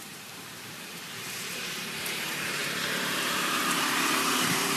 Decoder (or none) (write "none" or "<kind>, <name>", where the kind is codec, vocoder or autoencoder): vocoder, BigVGAN v2